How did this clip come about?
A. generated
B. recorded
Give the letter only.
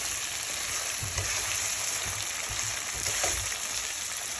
B